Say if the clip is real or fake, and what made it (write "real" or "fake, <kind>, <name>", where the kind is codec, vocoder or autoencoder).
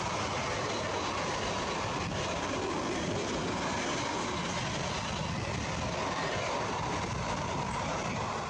real